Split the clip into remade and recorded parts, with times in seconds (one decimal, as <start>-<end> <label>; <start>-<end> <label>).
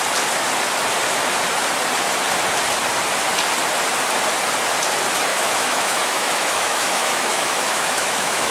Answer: 0.0-5.3 recorded; 5.3-8.5 remade